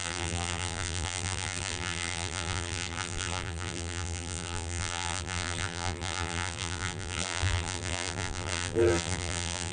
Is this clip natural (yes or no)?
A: no